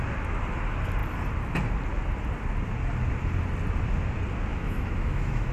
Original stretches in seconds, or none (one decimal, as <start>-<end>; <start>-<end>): 0.0-4.5